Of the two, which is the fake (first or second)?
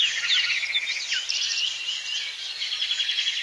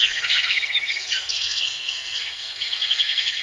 second